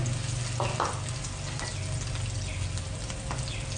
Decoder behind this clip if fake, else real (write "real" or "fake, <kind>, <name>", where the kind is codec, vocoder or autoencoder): real